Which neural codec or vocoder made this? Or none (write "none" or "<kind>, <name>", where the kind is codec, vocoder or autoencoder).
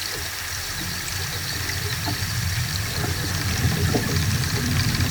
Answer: none